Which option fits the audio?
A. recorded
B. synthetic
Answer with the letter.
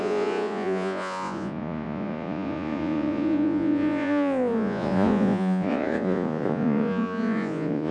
B